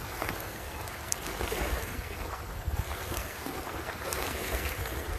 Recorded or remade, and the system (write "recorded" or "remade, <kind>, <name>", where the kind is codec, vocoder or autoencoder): remade, codec, SNAC